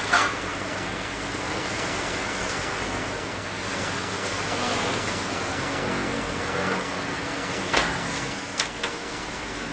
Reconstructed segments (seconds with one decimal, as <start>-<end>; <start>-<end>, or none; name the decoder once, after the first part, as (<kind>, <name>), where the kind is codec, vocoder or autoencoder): 0.0-9.7 (codec, SNAC)